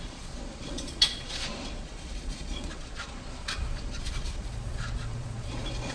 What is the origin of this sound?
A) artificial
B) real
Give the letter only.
A